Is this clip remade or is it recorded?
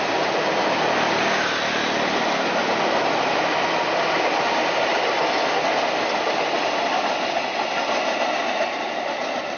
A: recorded